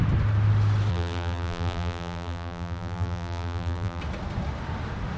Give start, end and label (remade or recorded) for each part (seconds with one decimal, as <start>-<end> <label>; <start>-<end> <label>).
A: 0.0-0.9 recorded; 0.9-4.0 remade; 4.0-5.2 recorded